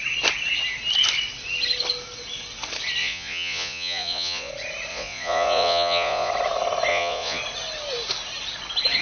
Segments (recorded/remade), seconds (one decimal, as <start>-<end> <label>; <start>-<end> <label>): 0.0-3.0 recorded; 3.0-4.5 remade; 4.5-4.9 recorded; 4.9-6.3 remade; 6.3-6.9 recorded; 6.9-7.4 remade; 7.4-9.0 recorded